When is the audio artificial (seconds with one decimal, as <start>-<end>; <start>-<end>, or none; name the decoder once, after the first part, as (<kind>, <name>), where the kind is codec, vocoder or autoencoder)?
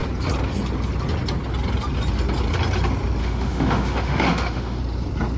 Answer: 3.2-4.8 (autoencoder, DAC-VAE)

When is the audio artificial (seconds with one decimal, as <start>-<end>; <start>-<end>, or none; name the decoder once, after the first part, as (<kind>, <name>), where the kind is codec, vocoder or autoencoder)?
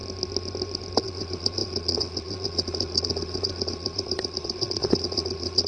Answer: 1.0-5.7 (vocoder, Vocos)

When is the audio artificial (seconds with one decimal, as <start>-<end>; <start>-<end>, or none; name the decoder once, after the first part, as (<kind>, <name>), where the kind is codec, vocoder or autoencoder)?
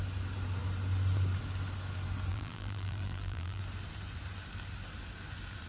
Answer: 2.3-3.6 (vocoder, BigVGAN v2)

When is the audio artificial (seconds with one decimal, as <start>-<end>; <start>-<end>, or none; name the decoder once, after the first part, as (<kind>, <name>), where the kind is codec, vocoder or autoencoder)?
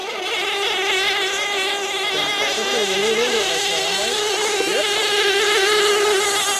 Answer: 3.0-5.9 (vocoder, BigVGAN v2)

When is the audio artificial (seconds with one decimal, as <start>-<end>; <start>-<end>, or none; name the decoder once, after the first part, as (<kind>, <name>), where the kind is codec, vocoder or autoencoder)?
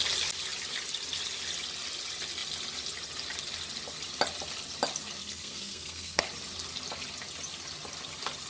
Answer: 5.2-6.2 (codec, SNAC)